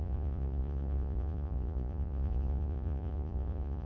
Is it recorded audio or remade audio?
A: remade